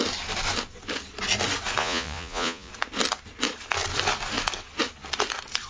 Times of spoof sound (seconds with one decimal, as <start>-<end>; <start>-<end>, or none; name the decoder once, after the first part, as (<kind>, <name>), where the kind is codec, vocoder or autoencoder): 1.8-2.7 (vocoder, Vocos)